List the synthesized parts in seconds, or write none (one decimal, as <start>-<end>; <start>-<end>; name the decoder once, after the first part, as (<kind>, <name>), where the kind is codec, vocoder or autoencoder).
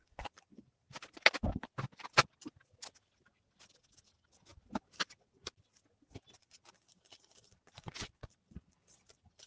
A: 0.0-0.9 (vocoder, Vocos); 6.4-9.5